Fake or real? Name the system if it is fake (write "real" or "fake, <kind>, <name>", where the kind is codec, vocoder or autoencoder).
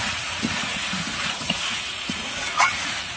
fake, vocoder, Vocos